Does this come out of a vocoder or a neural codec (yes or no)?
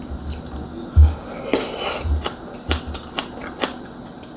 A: no